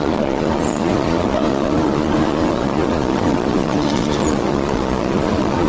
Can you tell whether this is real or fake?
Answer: fake